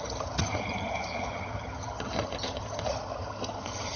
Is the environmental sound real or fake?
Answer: fake